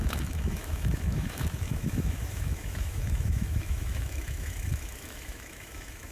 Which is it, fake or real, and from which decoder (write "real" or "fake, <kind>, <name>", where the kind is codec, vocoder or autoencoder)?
fake, autoencoder, DAC-VAE